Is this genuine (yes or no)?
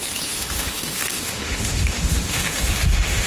no